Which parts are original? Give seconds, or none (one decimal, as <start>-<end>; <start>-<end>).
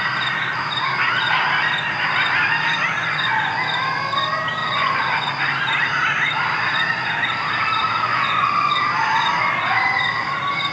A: 0.0-3.0; 3.6-4.6; 5.3-8.1; 8.7-10.7